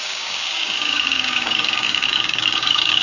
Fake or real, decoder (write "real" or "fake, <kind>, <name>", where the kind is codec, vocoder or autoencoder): fake, codec, DAC